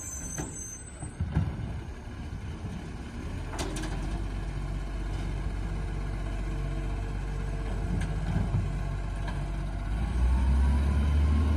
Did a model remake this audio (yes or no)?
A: no